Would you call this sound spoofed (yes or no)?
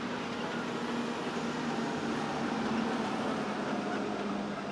no